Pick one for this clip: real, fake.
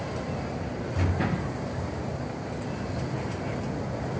real